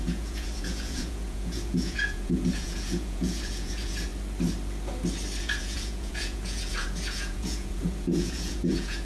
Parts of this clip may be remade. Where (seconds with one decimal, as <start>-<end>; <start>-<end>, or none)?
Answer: 0.0-4.1; 5.4-9.0